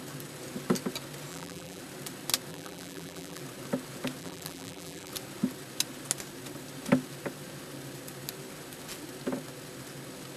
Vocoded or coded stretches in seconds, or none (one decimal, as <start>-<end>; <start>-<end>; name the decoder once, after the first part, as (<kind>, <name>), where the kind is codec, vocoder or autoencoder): 1.3-1.8 (vocoder, BigVGAN v2); 2.5-3.4; 4.2-5.1